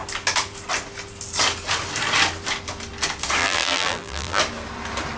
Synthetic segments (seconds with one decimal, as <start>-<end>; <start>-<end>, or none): 3.4-4.4